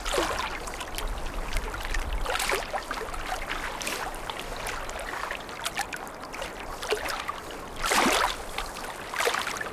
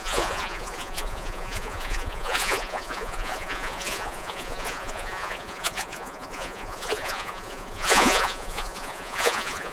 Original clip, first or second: first